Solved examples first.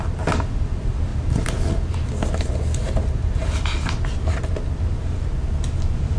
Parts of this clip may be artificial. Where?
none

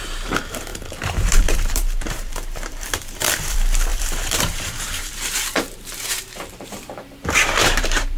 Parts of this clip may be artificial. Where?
0.0-8.2